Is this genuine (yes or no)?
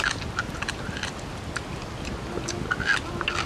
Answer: yes